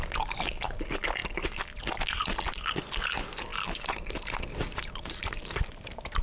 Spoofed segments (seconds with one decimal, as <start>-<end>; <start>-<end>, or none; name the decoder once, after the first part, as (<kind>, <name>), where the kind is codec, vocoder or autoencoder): 3.5-5.3 (vocoder, BigVGAN v2)